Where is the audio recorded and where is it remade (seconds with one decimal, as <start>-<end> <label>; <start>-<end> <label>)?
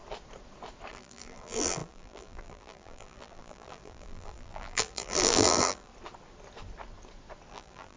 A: 0.0-0.9 recorded; 0.9-5.9 remade; 5.9-7.5 recorded; 7.5-8.0 remade